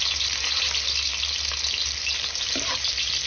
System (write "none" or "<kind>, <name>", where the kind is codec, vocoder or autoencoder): none